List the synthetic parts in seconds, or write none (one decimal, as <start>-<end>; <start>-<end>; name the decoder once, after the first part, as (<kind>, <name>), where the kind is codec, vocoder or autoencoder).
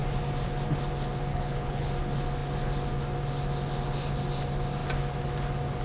1.3-1.9 (codec, HILCodec)